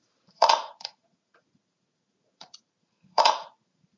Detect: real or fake fake